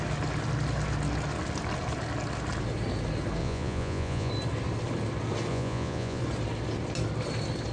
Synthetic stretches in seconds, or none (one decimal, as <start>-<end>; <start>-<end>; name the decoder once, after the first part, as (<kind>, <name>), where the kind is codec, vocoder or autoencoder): 3.4-4.3 (vocoder, Vocos); 5.5-6.2